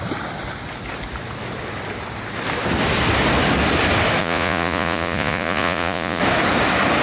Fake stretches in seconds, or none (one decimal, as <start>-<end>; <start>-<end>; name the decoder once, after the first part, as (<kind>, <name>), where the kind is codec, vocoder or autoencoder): 4.2-6.2 (vocoder, Vocos)